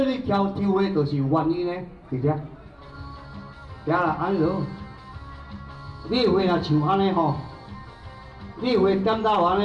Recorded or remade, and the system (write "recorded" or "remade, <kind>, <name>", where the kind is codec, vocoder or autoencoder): recorded